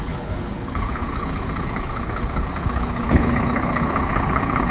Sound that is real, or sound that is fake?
fake